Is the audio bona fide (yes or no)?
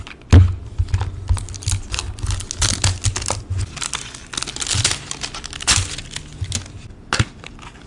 yes